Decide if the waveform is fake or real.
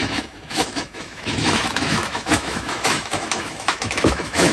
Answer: fake